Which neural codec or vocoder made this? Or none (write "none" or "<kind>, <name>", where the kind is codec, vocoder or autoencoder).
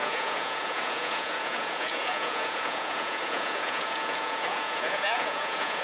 vocoder, Vocos